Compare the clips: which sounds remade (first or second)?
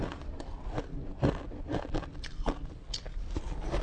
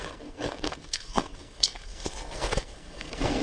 second